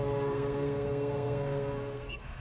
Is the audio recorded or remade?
remade